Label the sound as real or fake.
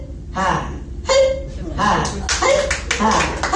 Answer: real